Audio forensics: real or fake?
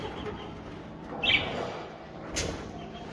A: real